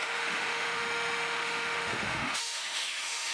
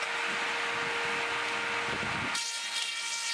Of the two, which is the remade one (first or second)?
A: first